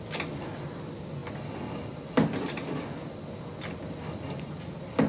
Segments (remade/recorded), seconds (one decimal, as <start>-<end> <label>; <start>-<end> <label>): 0.0-5.1 recorded